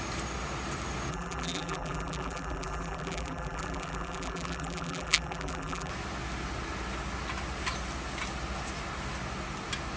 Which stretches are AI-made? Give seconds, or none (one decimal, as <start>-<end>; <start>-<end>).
1.1-5.9